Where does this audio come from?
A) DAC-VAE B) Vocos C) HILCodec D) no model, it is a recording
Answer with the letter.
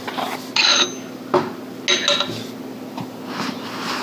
D